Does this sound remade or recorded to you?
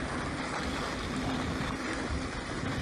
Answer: recorded